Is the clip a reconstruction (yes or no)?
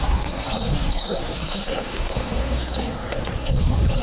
yes